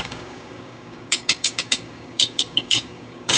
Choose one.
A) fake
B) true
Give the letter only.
A